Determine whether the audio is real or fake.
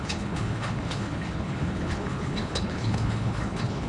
fake